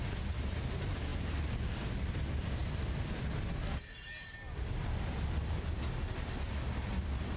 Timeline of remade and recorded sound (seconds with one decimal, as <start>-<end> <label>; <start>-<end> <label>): 0.0-1.1 recorded; 1.1-2.1 remade; 2.1-2.6 recorded; 2.6-5.4 remade; 5.4-7.4 recorded